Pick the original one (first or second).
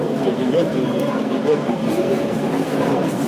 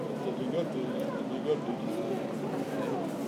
second